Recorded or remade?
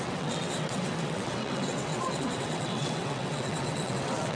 remade